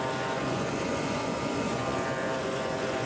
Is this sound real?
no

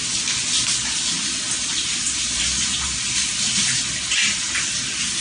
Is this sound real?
yes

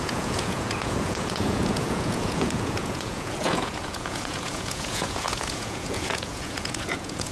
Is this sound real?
no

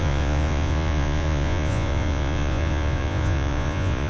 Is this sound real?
no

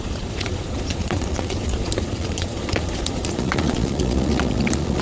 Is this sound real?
no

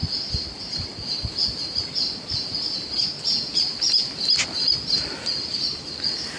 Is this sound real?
yes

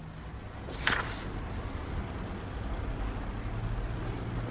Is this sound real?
yes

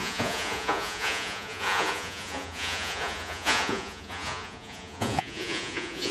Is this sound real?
no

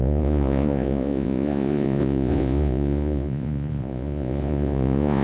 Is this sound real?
no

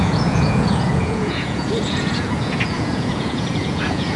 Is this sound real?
no